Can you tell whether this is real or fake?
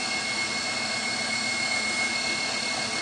real